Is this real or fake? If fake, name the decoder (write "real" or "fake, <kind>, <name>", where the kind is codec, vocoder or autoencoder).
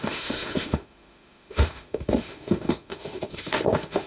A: fake, autoencoder, DAC-VAE